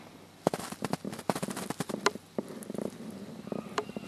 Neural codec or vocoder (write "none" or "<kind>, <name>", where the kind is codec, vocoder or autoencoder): none